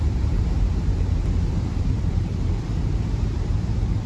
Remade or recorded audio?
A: remade